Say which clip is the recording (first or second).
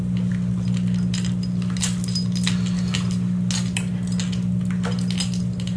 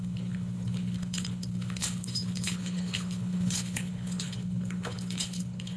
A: first